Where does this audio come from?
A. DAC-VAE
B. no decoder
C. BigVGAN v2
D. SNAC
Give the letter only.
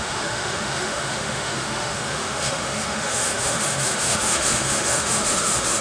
A